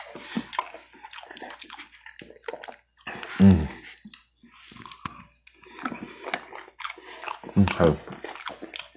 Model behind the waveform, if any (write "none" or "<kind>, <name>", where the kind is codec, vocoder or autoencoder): none